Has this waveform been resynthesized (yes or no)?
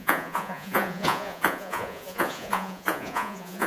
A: yes